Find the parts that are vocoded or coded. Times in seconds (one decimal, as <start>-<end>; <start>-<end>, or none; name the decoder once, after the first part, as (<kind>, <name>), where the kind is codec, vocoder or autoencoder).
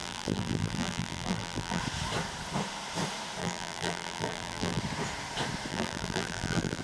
0.0-1.8 (vocoder, BigVGAN v2); 3.4-4.8; 5.7-6.8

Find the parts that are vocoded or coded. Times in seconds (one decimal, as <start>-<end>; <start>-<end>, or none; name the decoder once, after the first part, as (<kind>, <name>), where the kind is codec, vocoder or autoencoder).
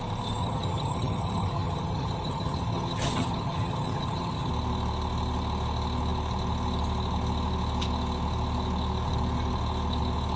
0.4-4.5 (vocoder, HiFi-GAN)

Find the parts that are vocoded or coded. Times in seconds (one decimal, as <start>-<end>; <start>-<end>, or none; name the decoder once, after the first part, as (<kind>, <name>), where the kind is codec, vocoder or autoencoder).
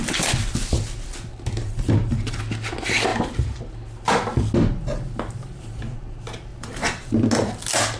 1.6-2.4 (vocoder, BigVGAN v2); 6.5-7.1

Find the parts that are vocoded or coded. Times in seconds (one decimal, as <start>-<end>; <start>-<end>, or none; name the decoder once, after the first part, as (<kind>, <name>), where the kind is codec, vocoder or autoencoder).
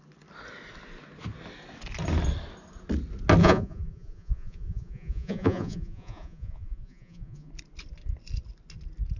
3.4-7.5 (vocoder, Vocos)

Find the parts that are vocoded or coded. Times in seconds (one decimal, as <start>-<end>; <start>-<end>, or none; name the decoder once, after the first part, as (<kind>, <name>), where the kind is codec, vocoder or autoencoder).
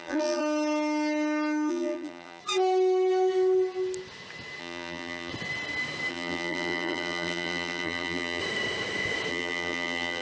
0.0-0.4 (vocoder, BigVGAN v2); 1.7-2.4; 4.6-5.3; 6.1-8.4; 9.3-10.2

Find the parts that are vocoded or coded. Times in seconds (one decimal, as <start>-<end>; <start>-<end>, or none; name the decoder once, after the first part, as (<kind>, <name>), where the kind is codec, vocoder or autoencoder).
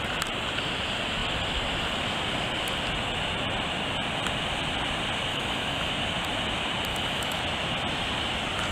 5.3-5.9 (autoencoder, DAC-VAE); 6.9-7.4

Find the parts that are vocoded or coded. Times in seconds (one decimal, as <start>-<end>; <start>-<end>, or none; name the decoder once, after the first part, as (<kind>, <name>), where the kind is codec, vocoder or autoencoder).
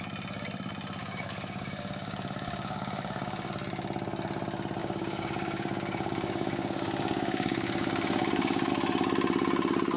1.0-3.5 (codec, DAC); 4.8-8.7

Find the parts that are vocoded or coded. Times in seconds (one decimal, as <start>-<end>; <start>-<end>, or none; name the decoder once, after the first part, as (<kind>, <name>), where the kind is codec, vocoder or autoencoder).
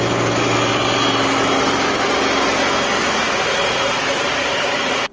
3.0-5.1 (vocoder, Vocos)